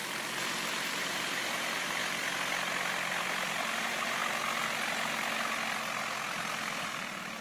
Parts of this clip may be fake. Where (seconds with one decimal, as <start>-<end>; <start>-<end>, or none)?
0.9-2.0; 3.8-4.2; 6.8-7.4